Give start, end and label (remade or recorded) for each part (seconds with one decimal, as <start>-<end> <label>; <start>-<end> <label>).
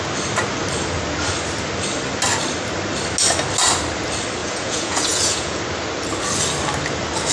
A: 0.0-4.4 recorded; 4.4-5.6 remade; 5.6-7.3 recorded